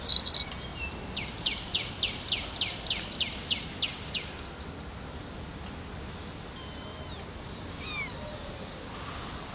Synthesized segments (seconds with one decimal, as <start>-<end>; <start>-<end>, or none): none